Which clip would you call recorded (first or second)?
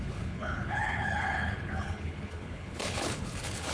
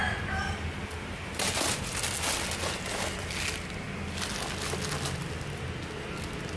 second